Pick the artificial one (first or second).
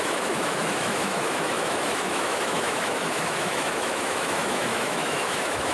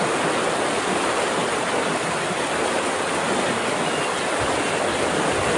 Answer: first